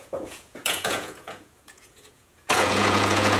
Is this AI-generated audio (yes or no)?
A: yes